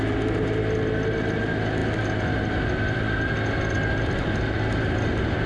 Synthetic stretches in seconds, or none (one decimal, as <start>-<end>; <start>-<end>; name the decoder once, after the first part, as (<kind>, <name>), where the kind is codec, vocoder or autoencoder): none